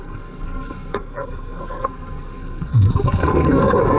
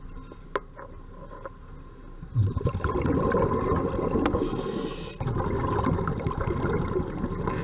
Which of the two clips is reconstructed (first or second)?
first